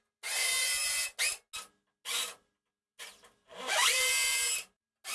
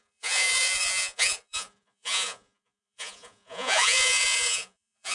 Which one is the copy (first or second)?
second